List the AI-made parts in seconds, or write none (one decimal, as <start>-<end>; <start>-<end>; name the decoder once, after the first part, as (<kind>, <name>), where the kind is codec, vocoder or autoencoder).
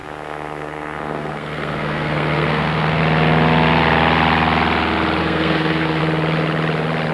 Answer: 0.0-3.0 (codec, SNAC); 5.2-6.0